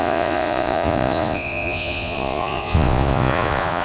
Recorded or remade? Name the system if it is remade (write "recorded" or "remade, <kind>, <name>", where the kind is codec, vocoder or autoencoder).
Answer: remade, vocoder, Vocos